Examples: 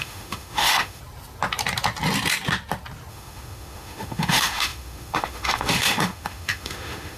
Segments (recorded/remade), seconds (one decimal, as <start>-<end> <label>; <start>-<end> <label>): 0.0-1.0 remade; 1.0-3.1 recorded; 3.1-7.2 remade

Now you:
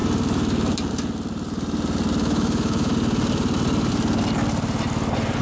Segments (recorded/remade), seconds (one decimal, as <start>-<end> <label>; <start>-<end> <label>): 0.0-2.2 recorded; 2.2-2.9 remade; 2.9-5.4 recorded

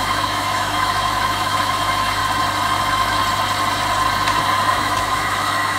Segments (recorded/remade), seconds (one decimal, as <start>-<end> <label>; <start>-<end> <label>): 0.0-2.2 remade; 2.2-2.8 recorded; 2.8-3.2 remade; 3.2-4.7 recorded; 4.7-5.8 remade

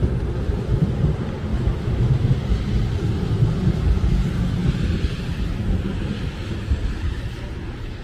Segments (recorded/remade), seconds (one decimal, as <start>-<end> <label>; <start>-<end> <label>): 0.0-1.5 recorded; 1.5-2.3 remade; 2.3-8.0 recorded

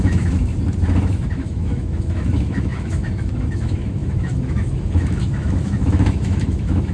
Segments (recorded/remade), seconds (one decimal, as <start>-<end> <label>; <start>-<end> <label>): 0.0-0.5 remade; 0.5-1.1 recorded; 1.1-6.9 remade

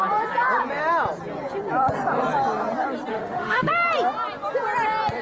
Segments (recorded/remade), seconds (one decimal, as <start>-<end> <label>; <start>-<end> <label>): 0.0-3.1 recorded; 3.1-3.7 remade; 3.7-5.2 recorded